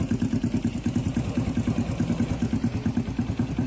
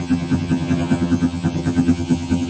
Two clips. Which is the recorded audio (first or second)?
first